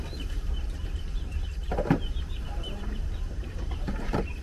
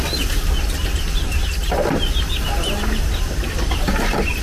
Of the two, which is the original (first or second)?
second